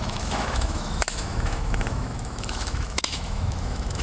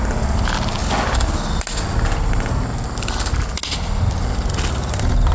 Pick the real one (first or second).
second